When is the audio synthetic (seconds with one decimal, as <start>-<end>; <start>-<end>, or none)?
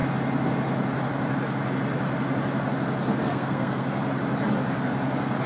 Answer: 3.2-3.9